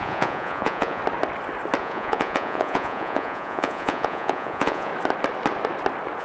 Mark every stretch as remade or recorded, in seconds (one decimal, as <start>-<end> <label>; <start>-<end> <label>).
0.0-1.0 remade; 1.0-1.8 recorded; 1.8-4.9 remade; 4.9-6.2 recorded